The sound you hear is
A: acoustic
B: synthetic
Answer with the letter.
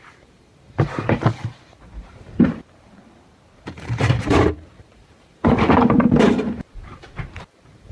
B